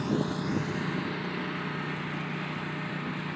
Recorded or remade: recorded